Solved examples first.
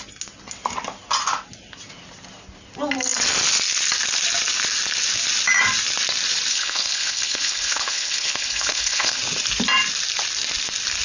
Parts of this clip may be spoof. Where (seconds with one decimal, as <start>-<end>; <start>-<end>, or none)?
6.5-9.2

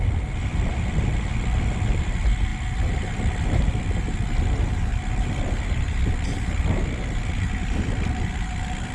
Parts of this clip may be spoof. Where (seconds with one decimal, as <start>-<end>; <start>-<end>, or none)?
none

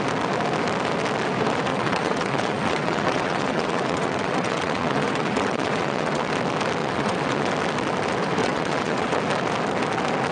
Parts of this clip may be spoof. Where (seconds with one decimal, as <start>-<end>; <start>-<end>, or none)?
1.7-6.3; 6.8-7.5; 8.4-9.2